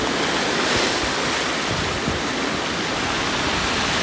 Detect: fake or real real